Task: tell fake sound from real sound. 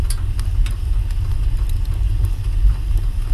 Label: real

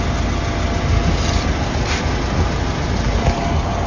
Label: real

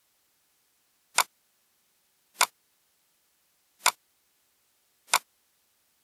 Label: real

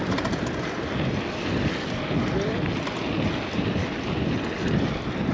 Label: fake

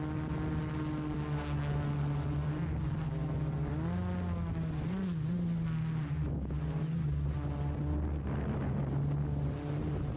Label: real